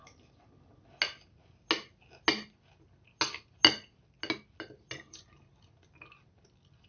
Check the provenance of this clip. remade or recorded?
recorded